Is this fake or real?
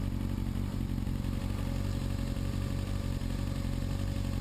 real